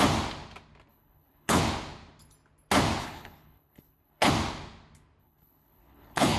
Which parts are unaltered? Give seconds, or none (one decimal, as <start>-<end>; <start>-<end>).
0.0-0.9; 1.6-3.0; 4.3-5.2